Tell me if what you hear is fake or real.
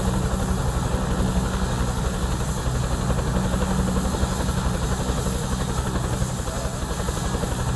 real